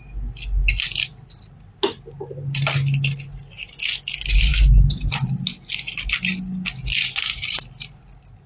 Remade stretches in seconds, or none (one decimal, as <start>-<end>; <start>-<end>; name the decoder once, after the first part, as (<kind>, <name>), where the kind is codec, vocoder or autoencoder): none